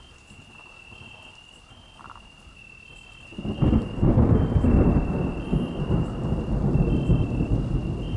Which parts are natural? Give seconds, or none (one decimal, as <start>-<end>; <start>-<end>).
0.0-8.2